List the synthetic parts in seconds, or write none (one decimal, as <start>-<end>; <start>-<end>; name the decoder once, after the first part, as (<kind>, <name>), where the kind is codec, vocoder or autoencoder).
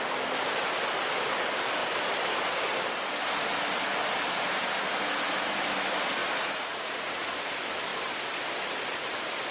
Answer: 6.2-7.5 (vocoder, Vocos)